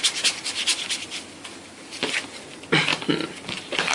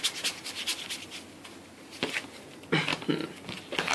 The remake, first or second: first